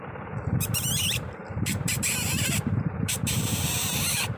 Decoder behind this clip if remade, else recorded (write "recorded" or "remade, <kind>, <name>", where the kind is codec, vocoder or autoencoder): remade, vocoder, BigVGAN v2